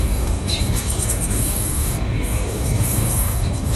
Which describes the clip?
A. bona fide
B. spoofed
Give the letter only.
B